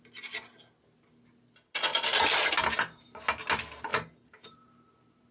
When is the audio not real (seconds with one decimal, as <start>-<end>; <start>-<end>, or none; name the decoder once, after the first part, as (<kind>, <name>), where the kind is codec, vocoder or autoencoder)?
1.9-2.6 (vocoder, BigVGAN v2); 3.9-4.5

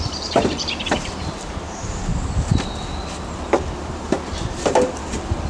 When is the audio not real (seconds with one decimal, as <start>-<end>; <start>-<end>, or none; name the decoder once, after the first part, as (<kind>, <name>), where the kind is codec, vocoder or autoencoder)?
0.0-2.1 (vocoder, BigVGAN v2); 3.6-5.0

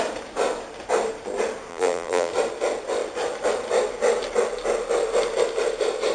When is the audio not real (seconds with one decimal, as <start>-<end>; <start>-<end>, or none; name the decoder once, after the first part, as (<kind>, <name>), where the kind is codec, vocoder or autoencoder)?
1.7-2.3 (vocoder, BigVGAN v2)

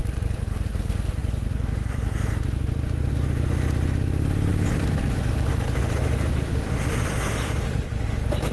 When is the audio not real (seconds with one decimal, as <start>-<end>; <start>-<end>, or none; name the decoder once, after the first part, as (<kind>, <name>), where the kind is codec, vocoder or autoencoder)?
0.0-0.7 (vocoder, BigVGAN v2); 1.2-3.1